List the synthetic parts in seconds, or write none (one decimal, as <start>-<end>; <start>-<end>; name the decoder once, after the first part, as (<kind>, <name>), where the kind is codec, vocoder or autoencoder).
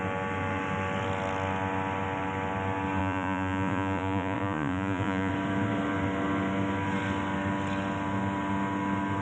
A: 3.0-5.3 (vocoder, Vocos)